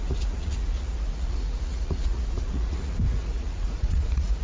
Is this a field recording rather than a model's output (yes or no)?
no